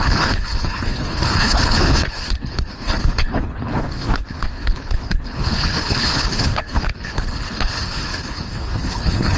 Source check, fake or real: fake